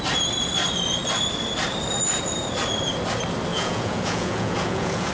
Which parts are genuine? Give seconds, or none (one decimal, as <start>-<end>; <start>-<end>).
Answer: 0.0-3.5

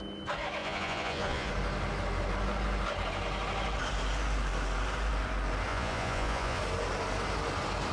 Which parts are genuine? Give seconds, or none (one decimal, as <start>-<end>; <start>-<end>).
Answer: 0.0-0.6; 1.5-5.7; 6.6-7.9

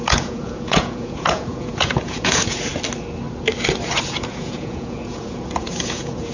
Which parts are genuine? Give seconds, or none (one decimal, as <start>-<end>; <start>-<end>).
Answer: 2.7-4.1